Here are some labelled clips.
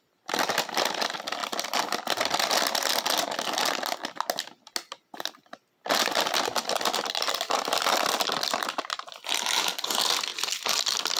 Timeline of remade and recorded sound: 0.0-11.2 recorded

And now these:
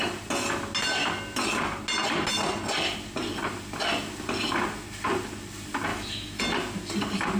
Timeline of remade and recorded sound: 0.0-5.9 recorded; 5.9-6.4 remade; 6.4-7.4 recorded

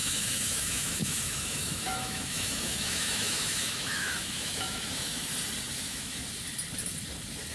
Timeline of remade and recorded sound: 0.0-5.3 remade; 5.3-5.8 recorded; 5.8-6.2 remade; 6.2-7.5 recorded

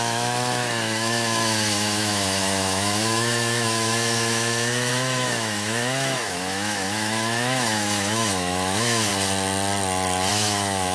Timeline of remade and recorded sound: 0.0-9.1 remade; 9.1-10.3 recorded; 10.3-10.9 remade

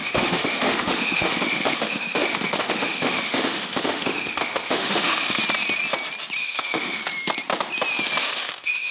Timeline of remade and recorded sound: 0.0-5.4 remade; 5.4-6.4 recorded; 6.4-7.0 remade; 7.0-8.2 recorded; 8.2-8.9 remade

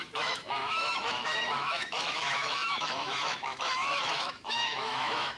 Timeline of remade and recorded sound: 0.0-5.4 remade

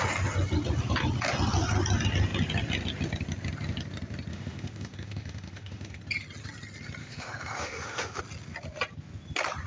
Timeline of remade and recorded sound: 0.0-4.3 recorded; 4.3-6.0 remade; 6.0-7.0 recorded; 7.0-8.2 remade; 8.2-9.7 recorded

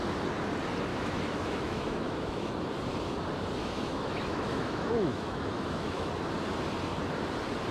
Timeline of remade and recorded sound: 0.0-0.9 recorded; 0.9-2.5 remade; 2.5-3.6 recorded; 3.6-6.1 remade; 6.1-7.7 recorded